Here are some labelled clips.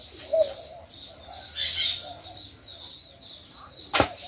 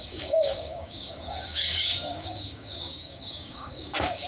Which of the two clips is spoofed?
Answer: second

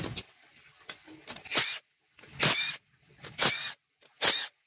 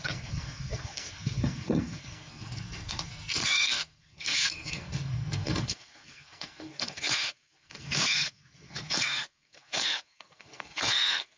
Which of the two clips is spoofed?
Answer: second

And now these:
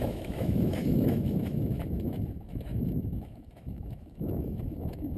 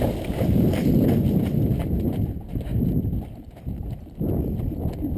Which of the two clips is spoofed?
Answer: first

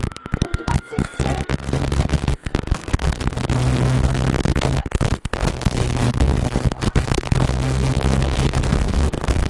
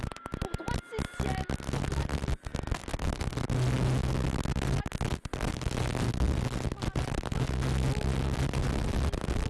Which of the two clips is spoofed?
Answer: first